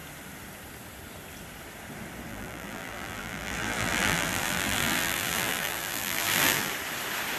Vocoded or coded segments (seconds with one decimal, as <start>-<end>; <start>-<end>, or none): 2.3-6.7